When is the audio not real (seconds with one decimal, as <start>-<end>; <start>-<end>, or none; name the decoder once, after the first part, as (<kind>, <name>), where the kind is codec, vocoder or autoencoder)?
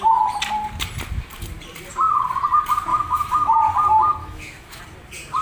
2.9-3.5 (autoencoder, DAC-VAE); 4.2-4.8